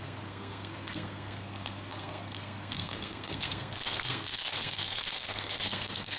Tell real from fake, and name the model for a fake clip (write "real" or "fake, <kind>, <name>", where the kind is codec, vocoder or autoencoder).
fake, codec, SNAC